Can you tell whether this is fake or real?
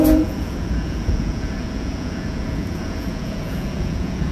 fake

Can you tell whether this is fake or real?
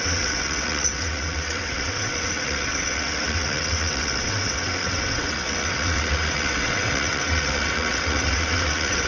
fake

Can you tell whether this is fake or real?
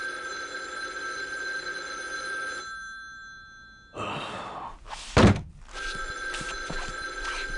real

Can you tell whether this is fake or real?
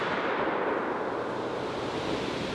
real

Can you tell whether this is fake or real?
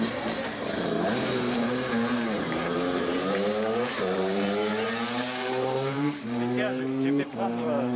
fake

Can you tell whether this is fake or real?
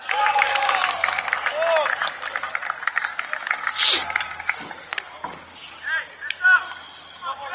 real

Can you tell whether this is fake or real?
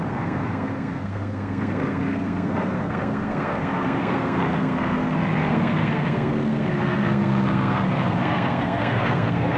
fake